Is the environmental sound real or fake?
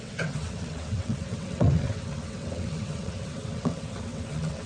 fake